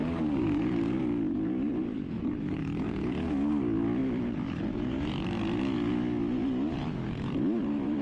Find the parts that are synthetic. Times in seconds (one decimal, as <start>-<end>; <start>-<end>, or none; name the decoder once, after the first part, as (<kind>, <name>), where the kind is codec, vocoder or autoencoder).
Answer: 0.0-1.0 (codec, DAC); 1.9-2.6